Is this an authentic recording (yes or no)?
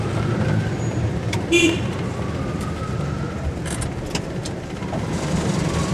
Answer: no